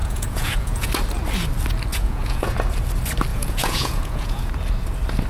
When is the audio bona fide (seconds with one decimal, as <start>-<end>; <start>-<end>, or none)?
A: 0.9-1.9; 2.5-3.3; 4.5-5.3